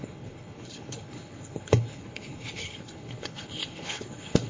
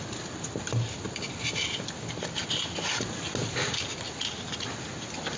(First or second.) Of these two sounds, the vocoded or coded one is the first